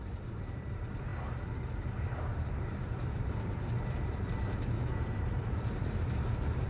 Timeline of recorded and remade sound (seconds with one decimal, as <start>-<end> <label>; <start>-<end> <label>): 0.0-6.7 remade